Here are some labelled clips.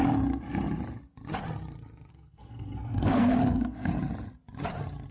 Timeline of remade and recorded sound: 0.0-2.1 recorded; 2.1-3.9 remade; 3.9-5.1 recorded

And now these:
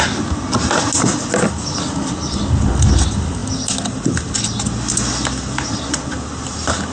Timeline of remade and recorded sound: 0.0-6.9 recorded

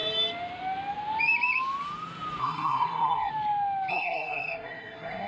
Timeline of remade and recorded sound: 0.0-2.4 recorded; 2.4-3.3 remade; 3.3-3.9 recorded; 3.9-5.3 remade

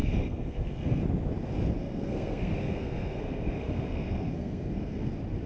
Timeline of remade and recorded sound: 0.0-1.0 remade; 1.0-1.8 recorded; 1.8-5.1 remade; 5.1-5.5 recorded

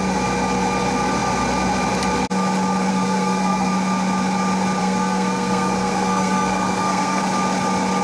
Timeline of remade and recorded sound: 0.0-2.9 recorded; 2.9-3.7 remade; 3.7-4.8 recorded; 4.8-7.2 remade; 7.2-8.0 recorded